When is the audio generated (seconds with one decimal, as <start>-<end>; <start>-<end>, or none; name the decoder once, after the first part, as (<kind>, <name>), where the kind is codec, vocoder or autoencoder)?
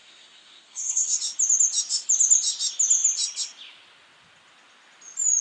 0.0-1.2 (codec, SNAC)